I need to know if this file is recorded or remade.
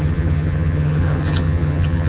remade